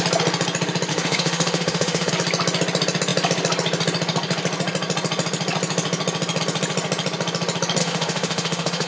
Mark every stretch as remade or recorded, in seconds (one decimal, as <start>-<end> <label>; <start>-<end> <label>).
0.0-0.9 recorded; 0.9-2.1 remade; 2.1-7.8 recorded; 7.8-8.9 remade